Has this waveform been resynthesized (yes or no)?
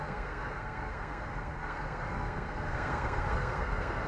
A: yes